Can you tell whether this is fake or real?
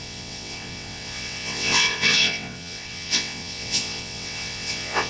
fake